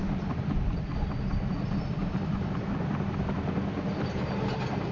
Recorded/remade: recorded